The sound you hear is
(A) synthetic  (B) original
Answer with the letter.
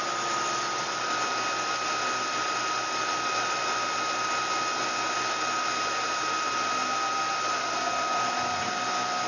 B